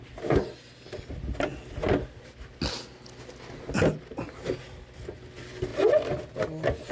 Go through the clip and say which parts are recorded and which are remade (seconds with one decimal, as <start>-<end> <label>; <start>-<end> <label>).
0.0-6.9 recorded